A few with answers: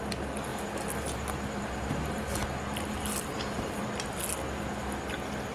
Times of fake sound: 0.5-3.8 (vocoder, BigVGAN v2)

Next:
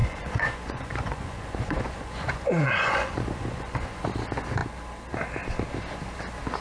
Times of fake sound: 0.0-4.0 (vocoder, Vocos)